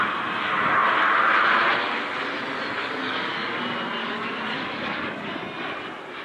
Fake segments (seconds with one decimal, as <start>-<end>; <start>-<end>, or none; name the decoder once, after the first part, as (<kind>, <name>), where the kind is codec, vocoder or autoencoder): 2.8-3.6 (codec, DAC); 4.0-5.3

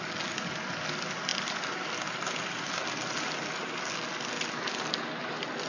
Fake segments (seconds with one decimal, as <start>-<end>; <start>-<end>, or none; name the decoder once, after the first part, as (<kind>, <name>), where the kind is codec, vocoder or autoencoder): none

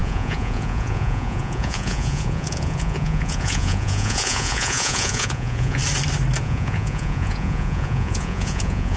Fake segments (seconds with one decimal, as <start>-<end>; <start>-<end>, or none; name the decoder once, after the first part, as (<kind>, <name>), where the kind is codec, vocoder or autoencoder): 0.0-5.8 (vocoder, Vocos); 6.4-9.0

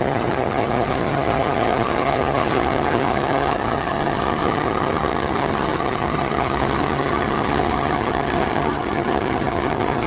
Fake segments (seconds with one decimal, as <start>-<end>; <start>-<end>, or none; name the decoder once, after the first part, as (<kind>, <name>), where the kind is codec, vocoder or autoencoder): 0.0-10.1 (vocoder, HiFi-GAN)